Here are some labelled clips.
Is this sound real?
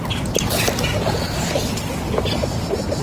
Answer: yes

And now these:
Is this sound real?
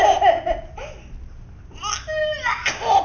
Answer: yes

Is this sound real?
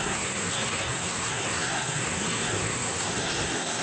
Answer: no